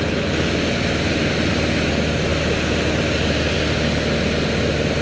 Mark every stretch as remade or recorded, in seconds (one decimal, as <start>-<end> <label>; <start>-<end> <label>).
0.0-5.0 recorded